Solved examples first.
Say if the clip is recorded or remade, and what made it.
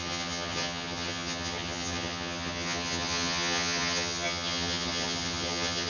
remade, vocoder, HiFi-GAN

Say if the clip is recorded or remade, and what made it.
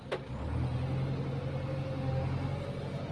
recorded